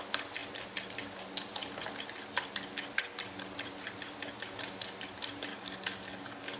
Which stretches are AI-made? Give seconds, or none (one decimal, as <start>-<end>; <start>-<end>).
5.5-6.6